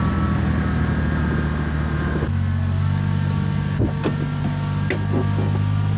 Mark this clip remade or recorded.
recorded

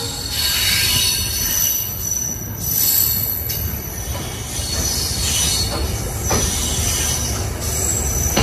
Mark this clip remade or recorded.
recorded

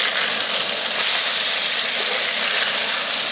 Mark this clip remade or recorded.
recorded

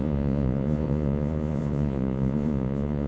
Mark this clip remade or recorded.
remade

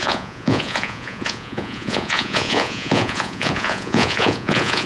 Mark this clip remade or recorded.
remade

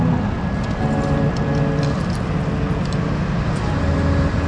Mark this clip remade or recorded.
recorded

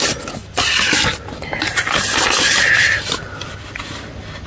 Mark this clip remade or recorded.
recorded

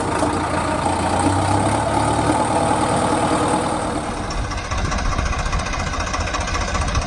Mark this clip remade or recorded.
recorded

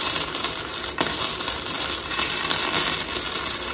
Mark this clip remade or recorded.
recorded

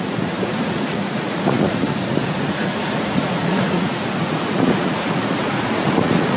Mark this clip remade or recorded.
remade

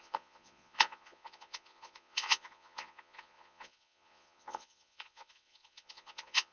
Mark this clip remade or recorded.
remade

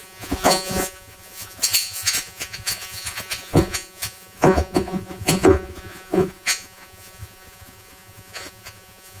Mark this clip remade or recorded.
remade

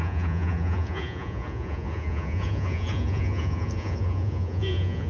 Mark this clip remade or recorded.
remade